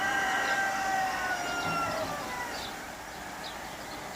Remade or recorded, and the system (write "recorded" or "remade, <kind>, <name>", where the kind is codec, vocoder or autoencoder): recorded